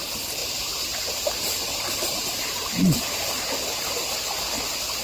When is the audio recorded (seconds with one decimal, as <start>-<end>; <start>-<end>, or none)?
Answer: 0.0-0.4; 3.4-5.0